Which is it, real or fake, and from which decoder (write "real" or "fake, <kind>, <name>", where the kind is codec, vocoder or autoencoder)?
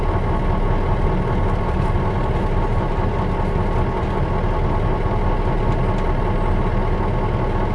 real